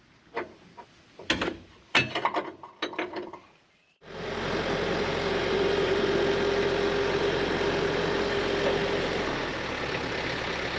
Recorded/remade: recorded